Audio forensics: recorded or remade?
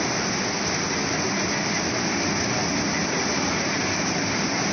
recorded